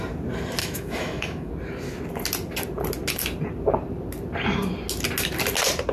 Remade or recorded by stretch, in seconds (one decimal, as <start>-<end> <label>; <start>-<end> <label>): 0.0-0.6 recorded; 0.6-1.5 remade; 1.5-5.9 recorded